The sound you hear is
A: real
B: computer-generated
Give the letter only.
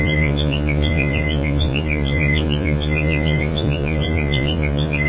B